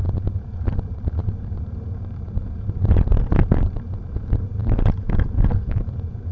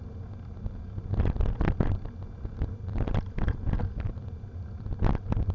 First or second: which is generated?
first